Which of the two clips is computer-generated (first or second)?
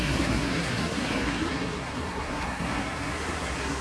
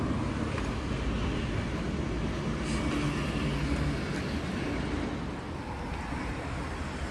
first